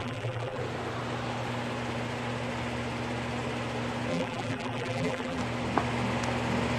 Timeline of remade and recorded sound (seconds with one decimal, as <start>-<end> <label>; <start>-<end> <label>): 0.0-0.6 remade; 0.6-4.1 recorded; 4.1-5.4 remade; 5.4-6.8 recorded